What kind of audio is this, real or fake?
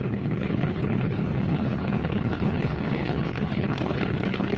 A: fake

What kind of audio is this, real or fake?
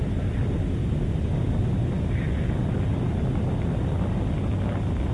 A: real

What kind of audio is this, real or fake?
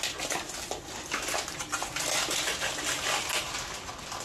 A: real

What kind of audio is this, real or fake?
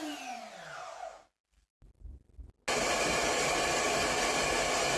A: real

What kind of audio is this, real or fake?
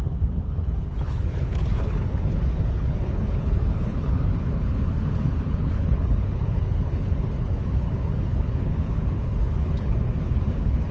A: fake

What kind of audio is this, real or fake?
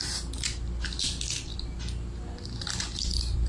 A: real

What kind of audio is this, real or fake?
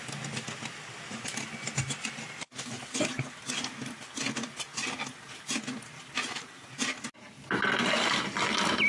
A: real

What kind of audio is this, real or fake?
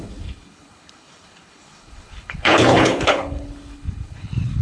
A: fake